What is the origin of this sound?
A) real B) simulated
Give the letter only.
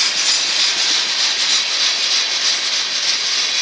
A